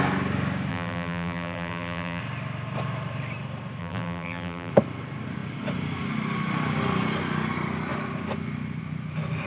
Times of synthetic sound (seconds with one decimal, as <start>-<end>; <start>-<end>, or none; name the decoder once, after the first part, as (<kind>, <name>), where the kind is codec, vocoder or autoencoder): 0.7-2.2 (vocoder, BigVGAN v2); 3.8-4.7